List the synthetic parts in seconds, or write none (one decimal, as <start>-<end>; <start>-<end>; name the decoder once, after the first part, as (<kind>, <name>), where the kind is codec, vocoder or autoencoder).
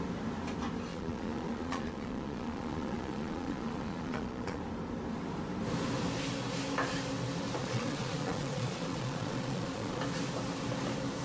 0.9-4.6 (vocoder, Vocos); 7.6-10.0